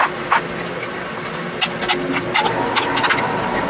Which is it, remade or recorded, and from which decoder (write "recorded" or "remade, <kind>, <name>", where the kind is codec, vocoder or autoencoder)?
recorded